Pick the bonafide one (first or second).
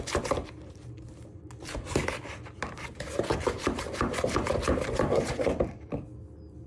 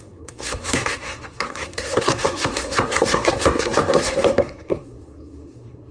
first